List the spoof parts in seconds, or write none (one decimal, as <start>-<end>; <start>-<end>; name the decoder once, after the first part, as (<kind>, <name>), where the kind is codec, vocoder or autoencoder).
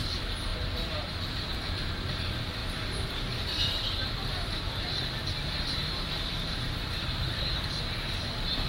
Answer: 0.5-1.5 (vocoder, BigVGAN v2); 2.6-7.3